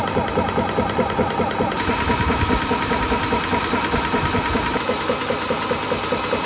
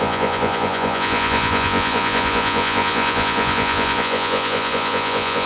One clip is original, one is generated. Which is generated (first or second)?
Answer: second